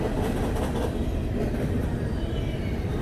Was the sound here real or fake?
real